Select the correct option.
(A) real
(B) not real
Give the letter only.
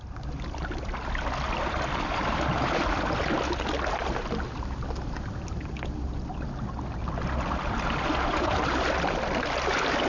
A